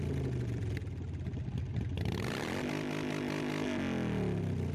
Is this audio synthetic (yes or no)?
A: no